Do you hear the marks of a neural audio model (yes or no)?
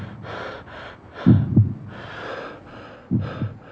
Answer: no